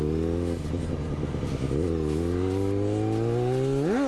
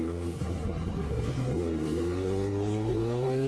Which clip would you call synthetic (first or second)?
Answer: second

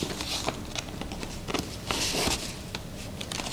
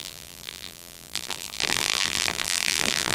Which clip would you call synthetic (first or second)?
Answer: second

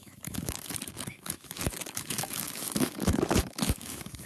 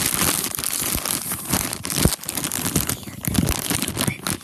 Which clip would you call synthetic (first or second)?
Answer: first